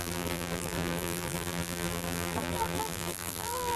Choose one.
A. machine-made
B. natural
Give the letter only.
A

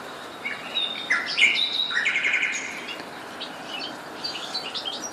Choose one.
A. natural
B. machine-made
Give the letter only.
A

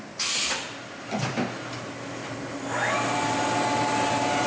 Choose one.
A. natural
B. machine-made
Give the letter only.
A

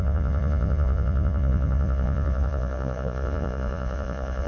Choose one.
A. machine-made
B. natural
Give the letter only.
A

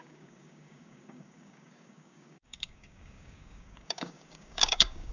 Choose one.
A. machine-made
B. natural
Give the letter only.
A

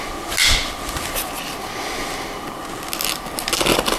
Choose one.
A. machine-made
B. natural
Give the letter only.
B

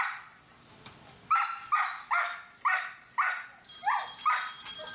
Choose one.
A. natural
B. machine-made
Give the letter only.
A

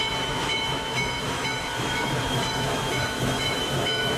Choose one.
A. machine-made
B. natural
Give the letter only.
A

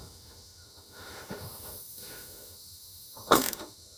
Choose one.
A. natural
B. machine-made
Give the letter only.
B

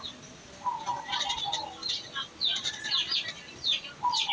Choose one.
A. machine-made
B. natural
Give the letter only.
B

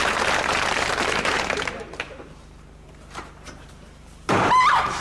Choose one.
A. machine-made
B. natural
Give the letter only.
A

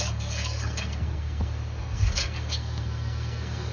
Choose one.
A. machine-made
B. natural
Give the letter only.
A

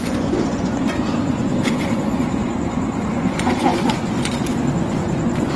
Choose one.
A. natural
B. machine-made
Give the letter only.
B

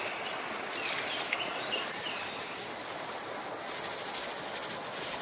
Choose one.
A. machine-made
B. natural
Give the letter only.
B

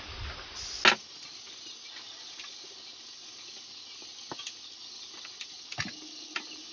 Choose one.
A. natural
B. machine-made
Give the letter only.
A